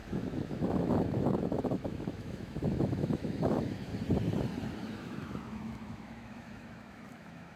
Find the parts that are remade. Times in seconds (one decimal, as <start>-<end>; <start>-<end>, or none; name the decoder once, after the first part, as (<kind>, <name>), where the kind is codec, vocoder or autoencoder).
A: 0.0-3.9 (autoencoder, DAC-VAE); 4.8-7.6